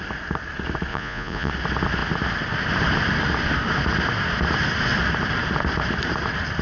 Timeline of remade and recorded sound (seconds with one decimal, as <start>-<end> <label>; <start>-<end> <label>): 0.0-0.9 recorded; 0.9-1.5 remade; 1.5-6.6 recorded